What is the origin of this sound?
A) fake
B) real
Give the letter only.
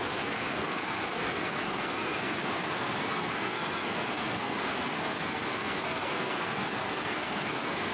A